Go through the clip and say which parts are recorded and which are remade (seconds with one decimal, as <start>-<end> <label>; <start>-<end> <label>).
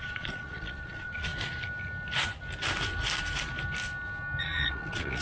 0.0-1.3 remade; 1.3-4.4 recorded; 4.4-5.2 remade